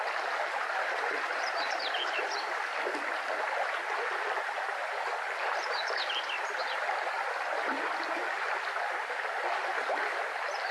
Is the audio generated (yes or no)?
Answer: no